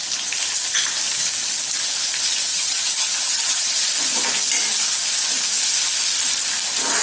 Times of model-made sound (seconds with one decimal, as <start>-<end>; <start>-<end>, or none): 2.5-3.8